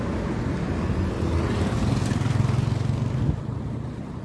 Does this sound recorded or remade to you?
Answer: recorded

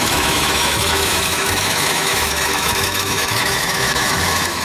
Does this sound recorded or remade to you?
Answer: remade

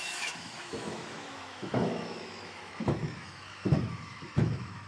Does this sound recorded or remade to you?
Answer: remade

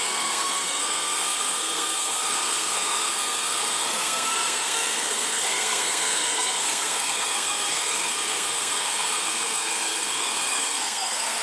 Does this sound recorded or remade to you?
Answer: remade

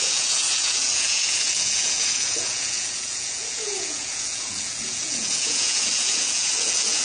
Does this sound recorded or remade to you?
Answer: remade